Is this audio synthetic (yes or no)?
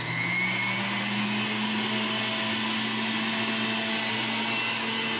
no